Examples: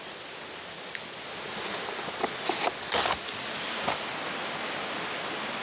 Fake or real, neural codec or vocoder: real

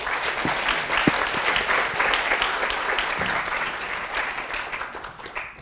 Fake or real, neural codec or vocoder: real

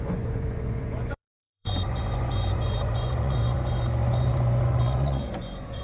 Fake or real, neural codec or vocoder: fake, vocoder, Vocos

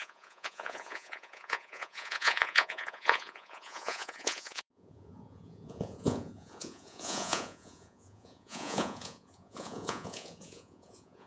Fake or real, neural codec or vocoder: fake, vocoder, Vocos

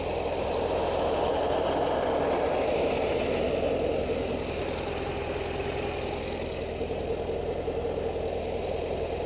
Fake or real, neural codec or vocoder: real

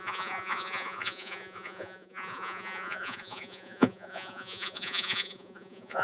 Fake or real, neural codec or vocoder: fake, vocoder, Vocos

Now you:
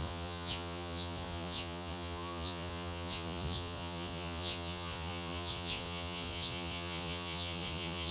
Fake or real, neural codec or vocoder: fake, vocoder, Vocos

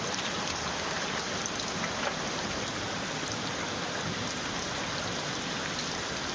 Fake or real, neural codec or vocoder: real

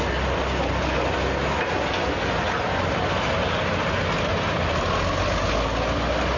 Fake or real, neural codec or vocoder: real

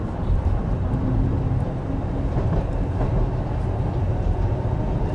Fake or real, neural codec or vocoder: real